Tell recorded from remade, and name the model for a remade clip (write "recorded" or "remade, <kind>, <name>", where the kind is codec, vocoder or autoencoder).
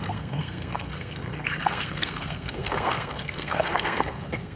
remade, codec, SNAC